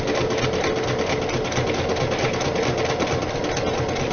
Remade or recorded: recorded